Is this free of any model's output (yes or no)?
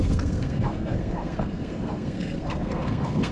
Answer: no